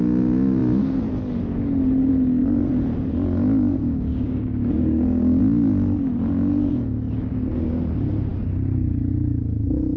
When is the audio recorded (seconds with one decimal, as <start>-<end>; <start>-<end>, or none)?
0.0-3.8; 5.4-10.0